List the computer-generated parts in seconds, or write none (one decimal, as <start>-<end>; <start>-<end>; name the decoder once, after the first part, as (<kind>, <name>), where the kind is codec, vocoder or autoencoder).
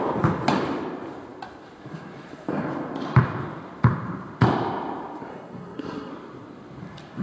5.3-6.1 (codec, SNAC)